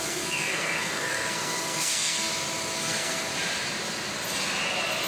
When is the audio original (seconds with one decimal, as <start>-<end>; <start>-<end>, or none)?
2.3-2.8; 3.3-5.1